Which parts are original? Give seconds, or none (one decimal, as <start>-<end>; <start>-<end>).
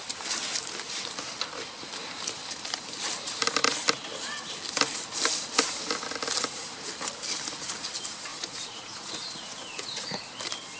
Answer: 0.0-8.3; 10.3-10.8